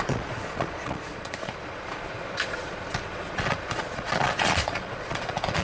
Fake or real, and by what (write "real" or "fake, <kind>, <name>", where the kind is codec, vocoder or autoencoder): fake, vocoder, Vocos